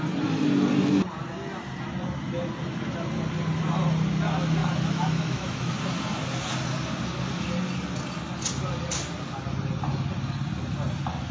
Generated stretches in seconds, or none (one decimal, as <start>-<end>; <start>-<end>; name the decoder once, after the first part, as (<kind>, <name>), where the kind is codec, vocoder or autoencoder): 4.6-5.7 (autoencoder, DAC-VAE)

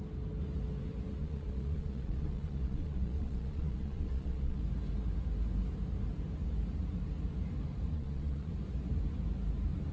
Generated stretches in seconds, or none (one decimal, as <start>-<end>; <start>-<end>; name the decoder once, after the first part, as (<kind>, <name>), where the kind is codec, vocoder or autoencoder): 1.2-4.6 (vocoder, Vocos); 7.9-8.5